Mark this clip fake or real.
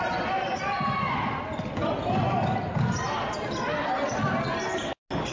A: real